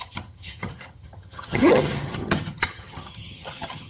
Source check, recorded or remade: remade